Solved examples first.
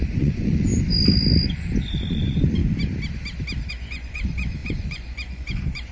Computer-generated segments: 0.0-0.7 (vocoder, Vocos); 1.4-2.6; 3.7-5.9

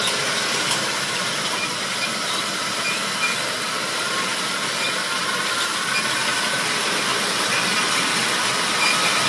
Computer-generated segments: none

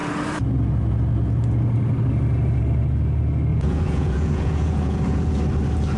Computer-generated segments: 3.5-5.4 (vocoder, Vocos)